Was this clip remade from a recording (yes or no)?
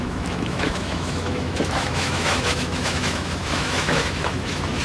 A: yes